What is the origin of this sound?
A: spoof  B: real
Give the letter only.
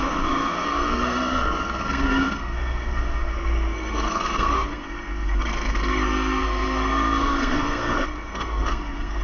A